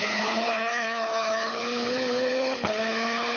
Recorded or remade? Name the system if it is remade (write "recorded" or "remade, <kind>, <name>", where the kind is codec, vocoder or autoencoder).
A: remade, codec, HILCodec